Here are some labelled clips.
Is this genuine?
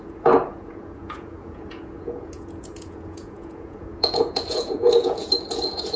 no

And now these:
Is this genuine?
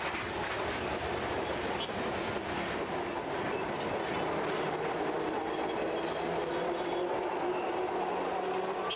yes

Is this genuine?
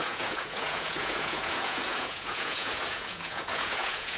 no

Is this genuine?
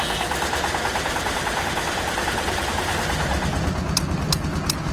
yes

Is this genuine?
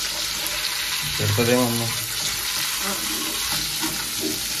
yes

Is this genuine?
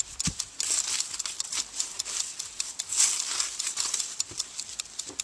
yes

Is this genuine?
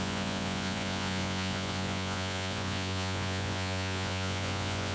no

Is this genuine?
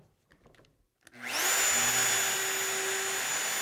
yes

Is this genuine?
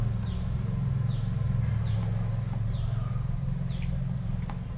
yes